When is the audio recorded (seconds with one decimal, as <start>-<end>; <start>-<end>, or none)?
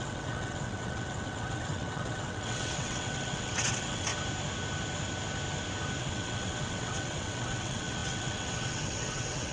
4.1-6.0